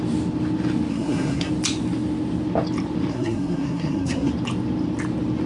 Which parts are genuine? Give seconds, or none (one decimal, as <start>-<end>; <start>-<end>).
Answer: 0.0-0.9; 1.5-3.1; 4.3-5.5